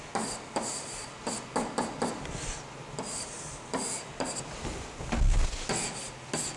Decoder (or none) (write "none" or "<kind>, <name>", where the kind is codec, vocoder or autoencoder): none